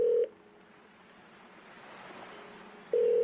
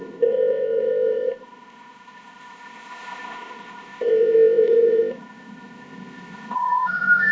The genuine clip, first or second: first